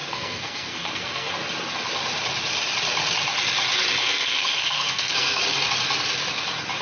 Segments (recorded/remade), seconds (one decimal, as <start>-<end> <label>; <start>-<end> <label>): 0.0-1.3 remade; 1.3-4.0 recorded; 4.0-5.4 remade; 5.4-6.8 recorded